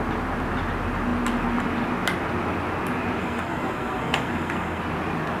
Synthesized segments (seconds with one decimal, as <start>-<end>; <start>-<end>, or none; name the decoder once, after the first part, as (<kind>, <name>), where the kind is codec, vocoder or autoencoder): 3.2-4.8 (codec, SNAC)